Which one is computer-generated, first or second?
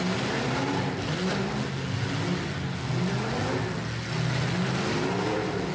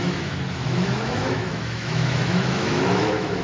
second